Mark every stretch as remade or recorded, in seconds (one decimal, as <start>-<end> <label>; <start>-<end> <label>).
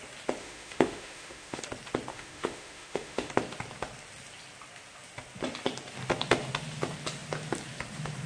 0.0-0.4 recorded; 0.4-1.6 remade; 1.6-2.1 recorded; 2.1-3.3 remade; 3.3-8.3 recorded